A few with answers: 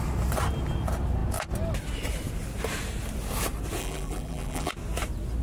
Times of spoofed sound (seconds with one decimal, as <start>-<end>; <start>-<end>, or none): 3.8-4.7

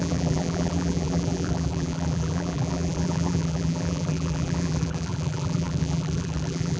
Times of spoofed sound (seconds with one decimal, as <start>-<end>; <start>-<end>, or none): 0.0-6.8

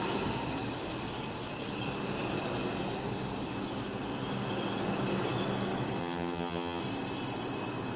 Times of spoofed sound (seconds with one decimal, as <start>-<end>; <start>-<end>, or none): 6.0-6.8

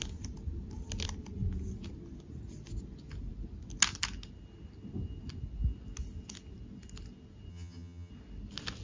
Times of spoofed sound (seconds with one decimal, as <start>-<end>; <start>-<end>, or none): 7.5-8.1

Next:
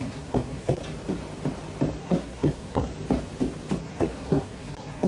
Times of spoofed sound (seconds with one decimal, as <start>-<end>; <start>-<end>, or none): 0.0-0.8; 2.0-2.9; 3.8-5.1

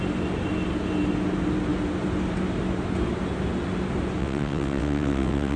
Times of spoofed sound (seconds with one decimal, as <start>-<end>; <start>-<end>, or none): 4.2-5.6